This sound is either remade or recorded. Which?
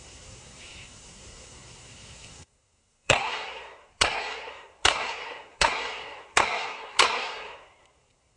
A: remade